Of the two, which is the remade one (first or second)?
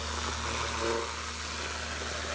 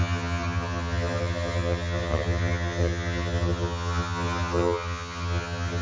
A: second